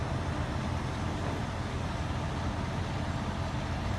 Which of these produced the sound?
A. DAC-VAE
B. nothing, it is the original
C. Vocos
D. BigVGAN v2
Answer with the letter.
B